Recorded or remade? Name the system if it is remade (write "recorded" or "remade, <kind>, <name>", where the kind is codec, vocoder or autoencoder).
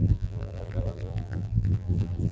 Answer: remade, vocoder, BigVGAN v2